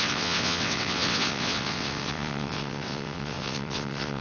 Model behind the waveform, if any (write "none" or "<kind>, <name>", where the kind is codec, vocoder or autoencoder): vocoder, WaveNeXt